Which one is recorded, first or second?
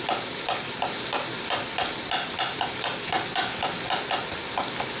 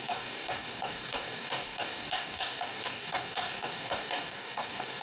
first